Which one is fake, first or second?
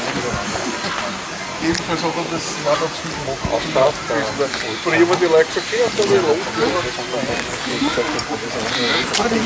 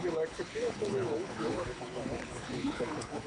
second